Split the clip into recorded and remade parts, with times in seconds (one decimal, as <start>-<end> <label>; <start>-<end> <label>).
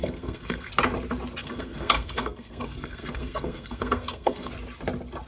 0.0-0.7 remade; 0.7-1.4 recorded; 1.4-4.5 remade; 4.5-5.3 recorded